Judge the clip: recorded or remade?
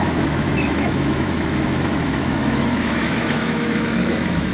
remade